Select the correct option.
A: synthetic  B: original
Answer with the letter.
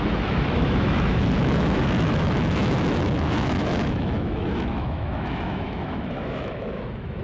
A